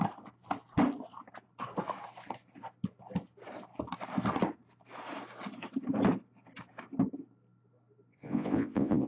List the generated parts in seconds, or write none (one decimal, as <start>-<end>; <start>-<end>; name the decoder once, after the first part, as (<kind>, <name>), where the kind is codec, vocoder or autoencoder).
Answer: 8.1-9.1 (vocoder, Vocos)